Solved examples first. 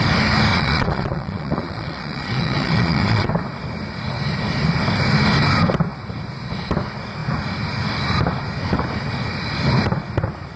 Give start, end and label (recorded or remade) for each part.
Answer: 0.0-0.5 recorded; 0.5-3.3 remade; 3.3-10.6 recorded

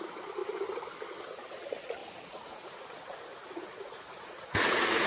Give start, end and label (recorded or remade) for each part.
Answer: 0.0-2.0 recorded; 2.0-5.1 remade

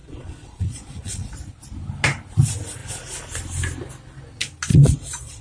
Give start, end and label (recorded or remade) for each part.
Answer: 0.0-1.3 remade; 1.3-4.7 recorded; 4.7-5.4 remade

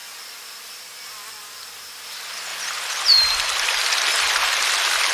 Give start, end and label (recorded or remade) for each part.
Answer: 0.0-5.1 recorded

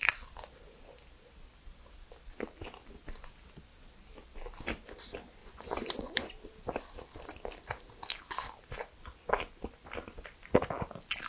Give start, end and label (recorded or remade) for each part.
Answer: 0.0-5.4 recorded; 5.4-6.3 remade; 6.3-11.3 recorded